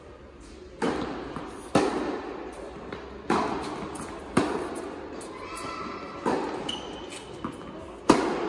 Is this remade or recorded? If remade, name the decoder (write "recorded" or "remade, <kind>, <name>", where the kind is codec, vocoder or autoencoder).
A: recorded